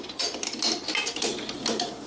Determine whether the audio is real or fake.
real